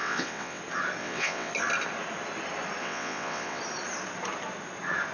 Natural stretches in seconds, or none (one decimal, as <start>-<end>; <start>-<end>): 0.6-1.0; 1.5-2.8; 3.6-5.1